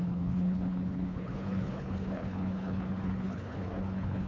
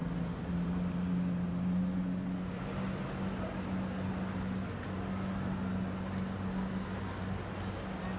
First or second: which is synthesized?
first